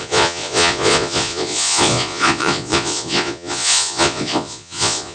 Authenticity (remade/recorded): remade